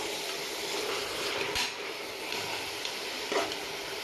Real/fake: real